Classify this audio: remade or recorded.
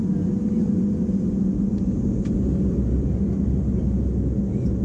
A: recorded